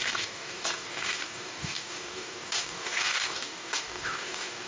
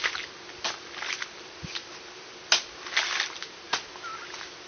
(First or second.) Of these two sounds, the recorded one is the second